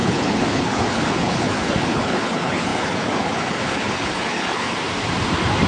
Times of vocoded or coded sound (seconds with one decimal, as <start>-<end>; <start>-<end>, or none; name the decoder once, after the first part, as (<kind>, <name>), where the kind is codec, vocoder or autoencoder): 0.0-4.7 (codec, HILCodec)